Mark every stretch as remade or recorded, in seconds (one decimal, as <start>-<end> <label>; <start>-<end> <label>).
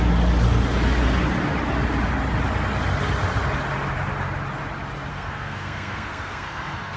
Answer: 0.0-5.1 recorded; 5.1-7.0 remade